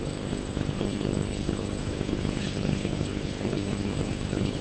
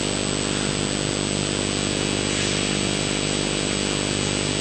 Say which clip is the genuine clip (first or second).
second